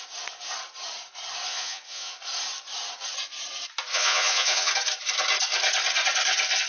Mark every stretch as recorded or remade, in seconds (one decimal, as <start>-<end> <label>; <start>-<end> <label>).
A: 0.0-1.5 recorded; 1.5-2.2 remade; 2.2-3.9 recorded; 3.9-4.7 remade; 4.7-6.7 recorded